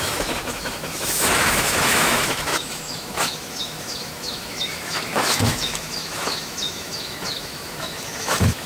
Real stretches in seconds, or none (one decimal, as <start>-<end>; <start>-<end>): none